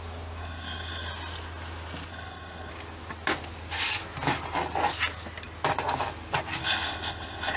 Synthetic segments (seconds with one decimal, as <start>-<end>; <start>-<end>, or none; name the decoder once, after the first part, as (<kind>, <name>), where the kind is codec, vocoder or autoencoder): 0.4-1.1 (codec, HILCodec); 2.1-2.7; 6.6-7.6